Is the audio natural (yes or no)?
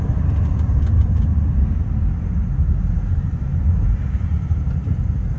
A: yes